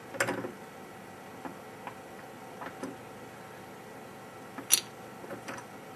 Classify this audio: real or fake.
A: real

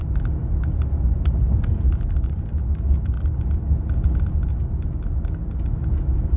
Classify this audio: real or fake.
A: real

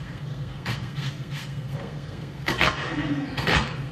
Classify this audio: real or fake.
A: fake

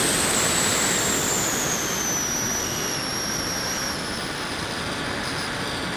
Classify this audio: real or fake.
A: real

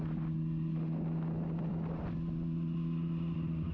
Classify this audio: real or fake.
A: real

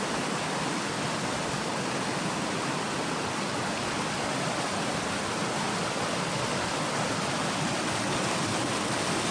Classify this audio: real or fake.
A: real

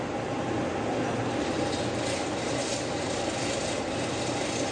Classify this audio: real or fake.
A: real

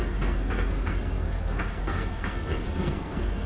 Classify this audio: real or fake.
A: fake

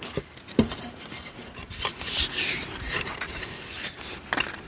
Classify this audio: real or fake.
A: real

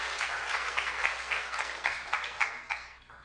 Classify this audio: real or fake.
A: fake